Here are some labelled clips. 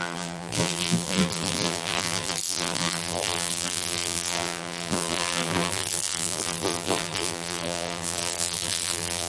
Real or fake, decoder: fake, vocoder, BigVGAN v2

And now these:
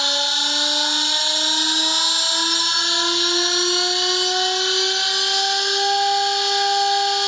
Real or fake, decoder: real